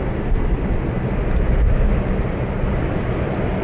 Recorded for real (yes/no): yes